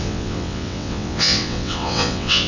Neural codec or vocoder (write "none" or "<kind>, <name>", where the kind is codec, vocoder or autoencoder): vocoder, WaveNeXt